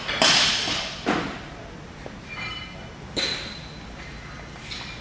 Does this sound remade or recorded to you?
recorded